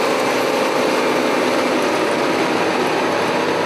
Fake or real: real